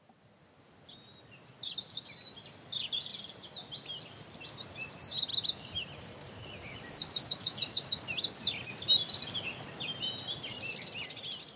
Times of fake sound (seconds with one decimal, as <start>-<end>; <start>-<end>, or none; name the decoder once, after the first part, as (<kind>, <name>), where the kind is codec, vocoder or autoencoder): 3.1-4.0 (vocoder, BigVGAN v2); 5.3-6.3